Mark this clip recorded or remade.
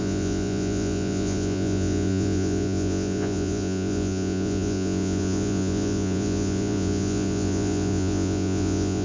remade